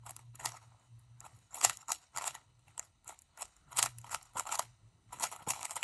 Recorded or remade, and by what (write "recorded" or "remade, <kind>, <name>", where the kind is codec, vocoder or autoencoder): remade, codec, HILCodec